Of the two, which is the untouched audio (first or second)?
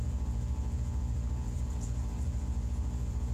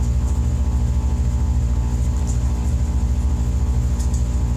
second